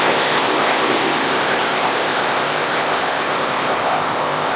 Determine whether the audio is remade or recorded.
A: remade